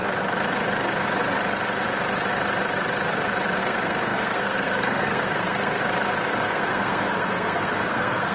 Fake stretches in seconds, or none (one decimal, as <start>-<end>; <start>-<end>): 3.6-5.8; 6.5-8.3